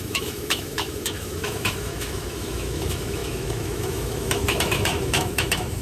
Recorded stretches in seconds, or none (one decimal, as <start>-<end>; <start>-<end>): none